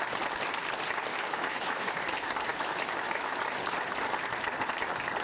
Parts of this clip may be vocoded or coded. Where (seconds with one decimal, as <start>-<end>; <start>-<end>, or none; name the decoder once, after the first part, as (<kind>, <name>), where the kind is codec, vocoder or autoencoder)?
1.1-1.9 (autoencoder, DAC-VAE); 2.5-3.4